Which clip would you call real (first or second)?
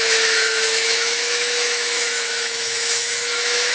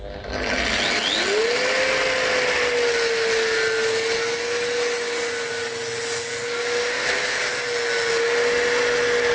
second